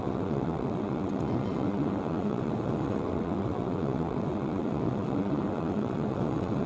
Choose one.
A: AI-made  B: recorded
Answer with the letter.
A